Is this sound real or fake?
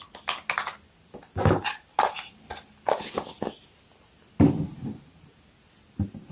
real